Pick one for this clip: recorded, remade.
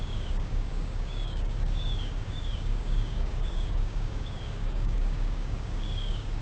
remade